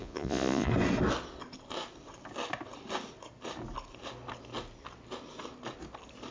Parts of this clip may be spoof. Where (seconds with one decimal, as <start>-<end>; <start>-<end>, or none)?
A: 0.0-0.7